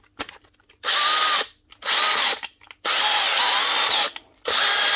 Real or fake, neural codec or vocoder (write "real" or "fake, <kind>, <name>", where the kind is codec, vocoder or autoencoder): fake, vocoder, BigVGAN v2